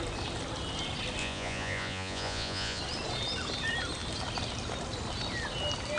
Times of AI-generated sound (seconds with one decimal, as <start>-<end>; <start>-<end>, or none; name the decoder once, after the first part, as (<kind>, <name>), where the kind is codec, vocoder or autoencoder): 1.2-2.8 (vocoder, Vocos)